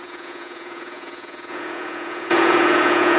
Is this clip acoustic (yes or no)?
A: no